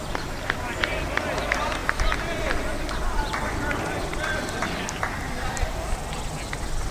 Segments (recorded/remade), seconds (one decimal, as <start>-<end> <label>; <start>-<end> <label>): 0.0-6.9 remade